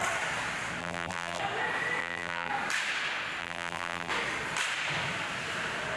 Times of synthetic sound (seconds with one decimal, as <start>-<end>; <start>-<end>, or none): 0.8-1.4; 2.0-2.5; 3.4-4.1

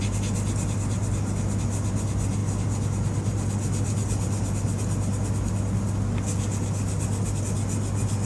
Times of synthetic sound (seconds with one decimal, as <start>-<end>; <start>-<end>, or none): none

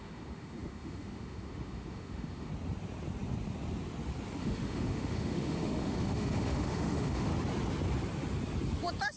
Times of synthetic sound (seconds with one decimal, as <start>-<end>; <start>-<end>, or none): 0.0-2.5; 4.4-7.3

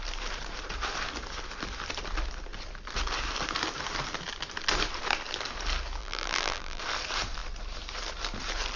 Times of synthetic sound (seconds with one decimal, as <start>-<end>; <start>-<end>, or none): 6.0-6.8